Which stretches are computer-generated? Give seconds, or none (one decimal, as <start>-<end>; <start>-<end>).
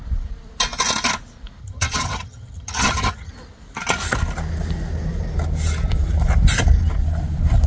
1.6-3.3